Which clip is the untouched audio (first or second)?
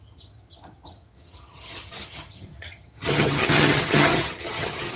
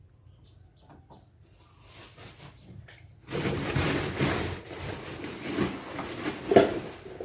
second